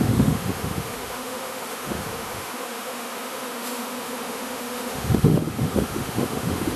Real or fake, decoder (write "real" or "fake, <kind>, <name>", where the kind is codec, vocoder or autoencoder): fake, autoencoder, DAC-VAE